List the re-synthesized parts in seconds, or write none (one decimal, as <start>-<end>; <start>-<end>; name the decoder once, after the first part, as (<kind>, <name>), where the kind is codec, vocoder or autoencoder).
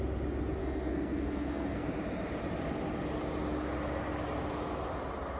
0.6-1.9 (codec, SNAC)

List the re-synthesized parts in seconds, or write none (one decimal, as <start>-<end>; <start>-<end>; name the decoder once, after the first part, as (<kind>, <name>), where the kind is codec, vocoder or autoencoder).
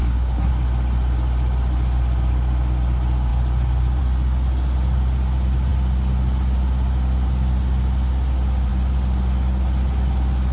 0.0-0.5 (codec, SNAC)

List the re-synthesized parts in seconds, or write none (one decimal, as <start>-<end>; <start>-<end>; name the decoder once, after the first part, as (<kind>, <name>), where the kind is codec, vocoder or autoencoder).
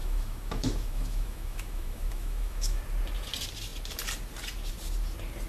0.0-2.8 (autoencoder, DAC-VAE)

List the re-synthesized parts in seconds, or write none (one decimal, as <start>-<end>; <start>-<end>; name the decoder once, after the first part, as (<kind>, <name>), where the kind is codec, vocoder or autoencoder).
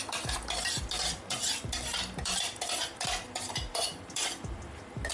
0.0-5.1 (vocoder, BigVGAN v2)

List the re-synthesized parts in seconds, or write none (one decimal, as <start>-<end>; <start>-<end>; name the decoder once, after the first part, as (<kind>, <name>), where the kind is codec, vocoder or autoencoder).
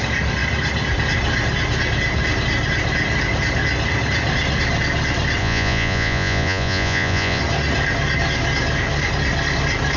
5.4-7.4 (vocoder, Vocos)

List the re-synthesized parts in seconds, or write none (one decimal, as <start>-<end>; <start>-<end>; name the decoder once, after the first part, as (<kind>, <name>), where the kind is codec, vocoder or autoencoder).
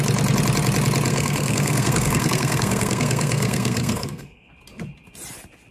1.1-4.5 (codec, SNAC)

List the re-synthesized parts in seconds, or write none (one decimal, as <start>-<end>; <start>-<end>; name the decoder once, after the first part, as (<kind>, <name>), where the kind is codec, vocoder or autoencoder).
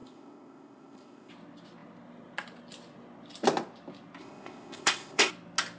0.0-1.3 (codec, ZipCodec); 4.2-5.3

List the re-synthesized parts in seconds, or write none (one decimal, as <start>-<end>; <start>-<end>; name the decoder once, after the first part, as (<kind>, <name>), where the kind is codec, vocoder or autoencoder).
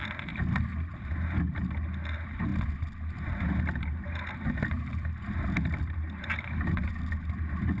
none